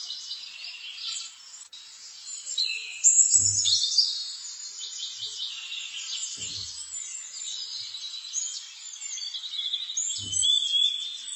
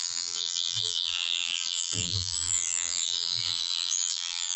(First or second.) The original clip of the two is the first